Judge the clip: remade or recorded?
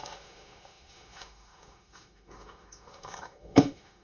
remade